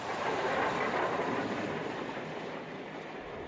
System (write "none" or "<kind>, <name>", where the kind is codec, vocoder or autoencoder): vocoder, BigVGAN v2